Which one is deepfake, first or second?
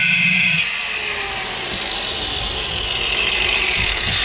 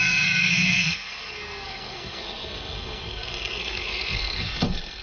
second